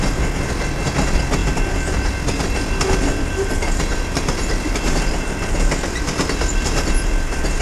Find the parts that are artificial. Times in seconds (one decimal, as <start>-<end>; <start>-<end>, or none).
1.4-2.1; 3.1-7.6